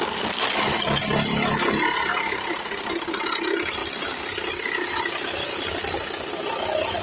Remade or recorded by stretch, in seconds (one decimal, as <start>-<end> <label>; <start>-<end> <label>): 0.0-7.0 recorded